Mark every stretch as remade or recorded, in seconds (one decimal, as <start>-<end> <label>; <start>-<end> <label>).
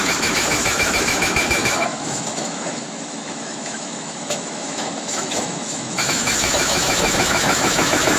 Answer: 0.0-8.2 remade